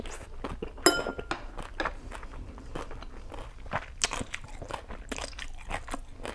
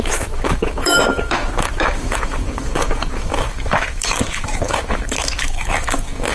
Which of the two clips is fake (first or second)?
second